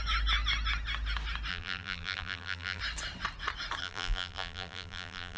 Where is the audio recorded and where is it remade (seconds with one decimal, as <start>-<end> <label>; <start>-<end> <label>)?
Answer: 0.0-1.5 recorded; 1.5-2.8 remade; 2.8-3.8 recorded; 3.8-5.4 remade